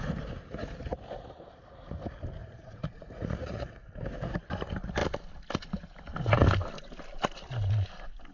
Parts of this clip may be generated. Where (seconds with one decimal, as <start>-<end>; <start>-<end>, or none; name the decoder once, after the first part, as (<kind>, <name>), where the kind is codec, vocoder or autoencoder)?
2.4-3.8 (vocoder, Vocos)